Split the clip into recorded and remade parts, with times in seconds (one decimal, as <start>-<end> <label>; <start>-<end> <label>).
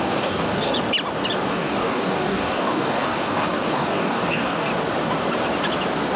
0.0-0.7 remade; 0.7-1.5 recorded; 1.5-4.7 remade; 4.7-6.2 recorded